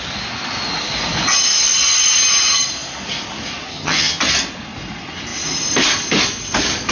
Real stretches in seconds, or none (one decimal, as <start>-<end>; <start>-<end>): 0.0-3.7; 4.2-6.9